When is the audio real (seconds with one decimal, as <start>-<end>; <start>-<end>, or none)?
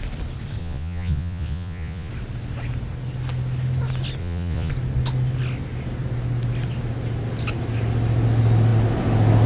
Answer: 0.0-0.6; 2.1-4.2; 4.7-9.5